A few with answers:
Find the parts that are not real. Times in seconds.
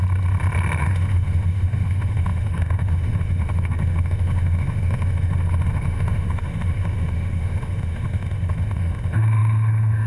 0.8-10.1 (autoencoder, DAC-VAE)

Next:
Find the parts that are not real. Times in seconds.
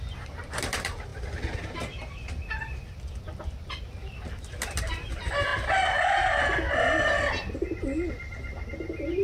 none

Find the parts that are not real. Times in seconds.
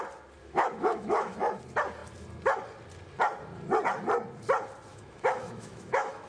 0.4-1.6 (autoencoder, DAC-VAE); 4.9-6.3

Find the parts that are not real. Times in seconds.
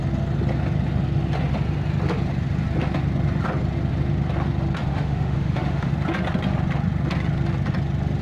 4.9-5.9 (autoencoder, DAC-VAE)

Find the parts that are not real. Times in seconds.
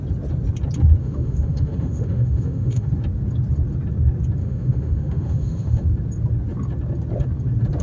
1.0-2.9 (autoencoder, DAC-VAE); 4.4-5.8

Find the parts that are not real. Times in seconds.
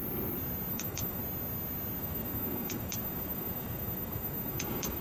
0.7-1.2 (autoencoder, DAC-VAE); 2.0-5.0